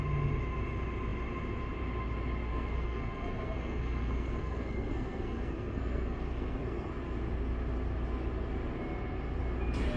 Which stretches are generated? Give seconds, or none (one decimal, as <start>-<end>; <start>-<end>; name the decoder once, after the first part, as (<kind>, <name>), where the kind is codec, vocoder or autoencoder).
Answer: 2.5-6.9 (codec, SNAC)